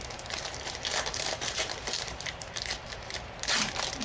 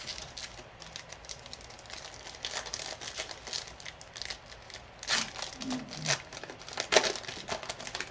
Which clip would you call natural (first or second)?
second